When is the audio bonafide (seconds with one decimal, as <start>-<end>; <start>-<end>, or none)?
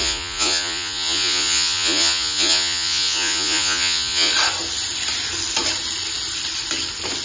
4.3-7.2